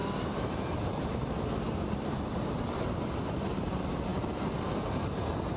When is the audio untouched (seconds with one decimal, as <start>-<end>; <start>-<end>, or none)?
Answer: 3.4-5.6

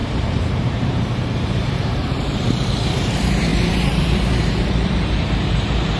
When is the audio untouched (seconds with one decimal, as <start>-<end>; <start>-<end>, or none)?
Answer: none

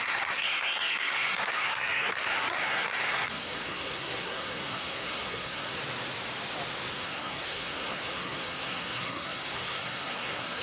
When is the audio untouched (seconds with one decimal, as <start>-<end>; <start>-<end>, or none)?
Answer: 5.8-6.9

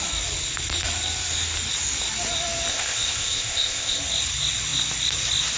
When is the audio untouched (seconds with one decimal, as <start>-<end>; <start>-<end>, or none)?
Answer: 0.0-2.7; 4.0-5.6

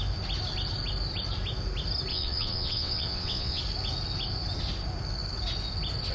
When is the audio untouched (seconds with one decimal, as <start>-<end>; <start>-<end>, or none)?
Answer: 0.0-2.1; 3.6-6.1

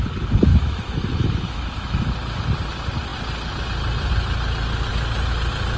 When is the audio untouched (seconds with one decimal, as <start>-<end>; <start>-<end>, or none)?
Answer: 0.0-0.5; 2.0-5.8